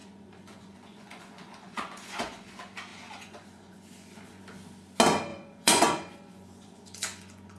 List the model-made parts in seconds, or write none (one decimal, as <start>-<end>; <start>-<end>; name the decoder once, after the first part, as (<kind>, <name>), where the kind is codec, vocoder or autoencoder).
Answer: 0.0-2.5 (vocoder, Vocos); 2.9-4.4; 5.3-7.6